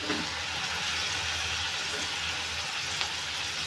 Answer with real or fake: real